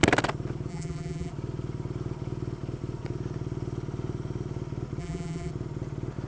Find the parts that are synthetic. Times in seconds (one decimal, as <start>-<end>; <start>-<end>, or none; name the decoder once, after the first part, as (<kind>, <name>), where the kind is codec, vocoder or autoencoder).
0.7-1.3 (vocoder, BigVGAN v2); 5.0-5.5